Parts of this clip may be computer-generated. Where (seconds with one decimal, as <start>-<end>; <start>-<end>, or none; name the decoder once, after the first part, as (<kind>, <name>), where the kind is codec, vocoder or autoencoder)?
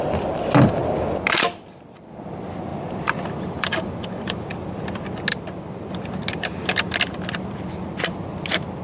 2.7-4.8 (vocoder, BigVGAN v2); 5.3-5.9